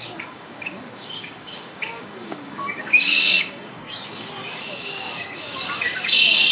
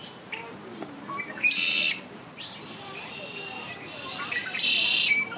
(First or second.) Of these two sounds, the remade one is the first